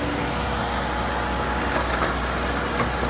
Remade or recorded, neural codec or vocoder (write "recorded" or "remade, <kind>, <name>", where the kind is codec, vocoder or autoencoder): recorded